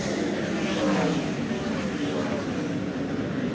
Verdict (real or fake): real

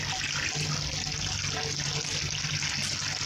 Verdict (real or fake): real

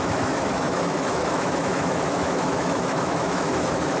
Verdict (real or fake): fake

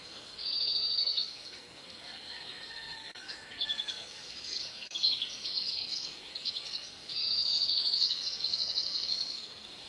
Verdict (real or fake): fake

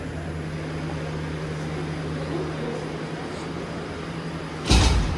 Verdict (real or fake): real